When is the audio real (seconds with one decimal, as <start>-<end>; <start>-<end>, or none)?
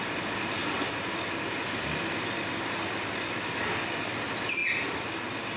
0.0-5.6